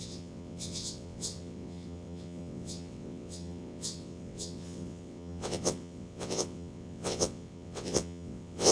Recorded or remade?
remade